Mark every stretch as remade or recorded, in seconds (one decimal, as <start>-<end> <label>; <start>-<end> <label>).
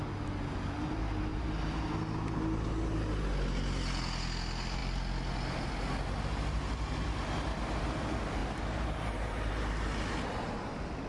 0.0-1.3 recorded; 1.3-1.9 remade; 1.9-8.4 recorded; 8.4-9.5 remade; 9.5-11.1 recorded